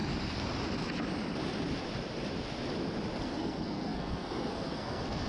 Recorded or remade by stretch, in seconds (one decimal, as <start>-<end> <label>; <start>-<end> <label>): 0.0-3.2 recorded; 3.2-5.3 remade

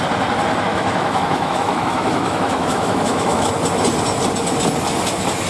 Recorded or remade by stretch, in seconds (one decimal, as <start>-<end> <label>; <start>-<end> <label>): 0.0-0.7 recorded; 0.7-3.5 remade; 3.5-5.5 recorded

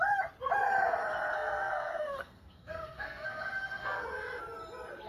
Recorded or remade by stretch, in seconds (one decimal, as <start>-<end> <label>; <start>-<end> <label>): 0.0-1.3 recorded; 1.3-4.4 remade; 4.4-5.1 recorded

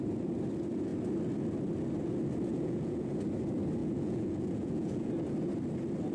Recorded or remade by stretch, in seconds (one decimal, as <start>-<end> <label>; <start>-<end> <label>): 0.0-2.5 recorded; 2.5-3.1 remade; 3.1-3.8 recorded; 3.8-5.1 remade; 5.1-6.1 recorded